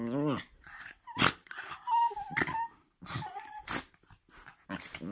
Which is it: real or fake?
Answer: real